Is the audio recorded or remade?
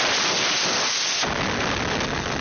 recorded